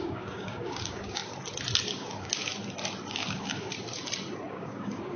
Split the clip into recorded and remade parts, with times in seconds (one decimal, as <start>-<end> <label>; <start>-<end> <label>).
0.0-1.2 remade; 1.2-1.8 recorded; 1.8-2.5 remade; 2.5-3.1 recorded; 3.1-3.7 remade; 3.7-4.5 recorded; 4.5-5.2 remade